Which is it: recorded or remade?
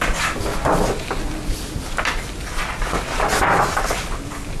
recorded